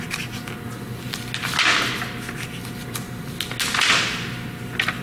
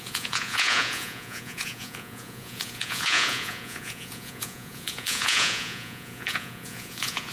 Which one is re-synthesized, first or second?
second